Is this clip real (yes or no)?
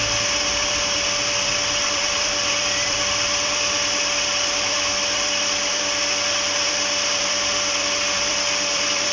no